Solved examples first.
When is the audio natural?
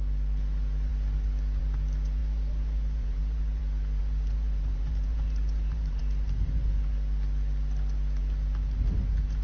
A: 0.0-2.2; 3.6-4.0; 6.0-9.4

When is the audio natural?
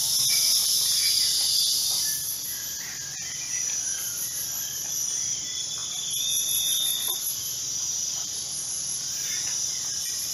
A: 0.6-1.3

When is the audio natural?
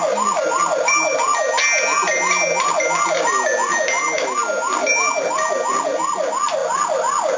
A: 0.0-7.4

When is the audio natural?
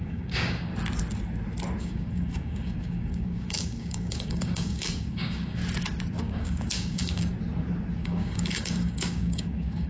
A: 0.7-1.8; 5.6-6.2; 7.3-8.0